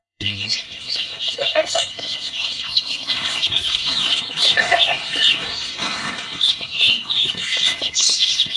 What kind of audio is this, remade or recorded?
remade